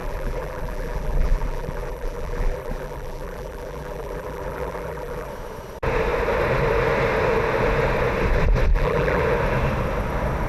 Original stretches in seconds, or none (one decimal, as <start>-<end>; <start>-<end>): 5.3-8.7; 9.2-10.5